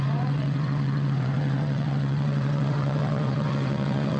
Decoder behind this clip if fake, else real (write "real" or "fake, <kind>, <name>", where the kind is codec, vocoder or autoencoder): fake, vocoder, WaveNeXt